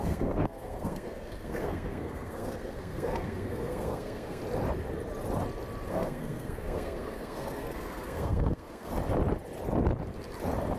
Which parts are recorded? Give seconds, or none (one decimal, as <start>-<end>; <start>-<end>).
4.4-5.9; 8.9-10.8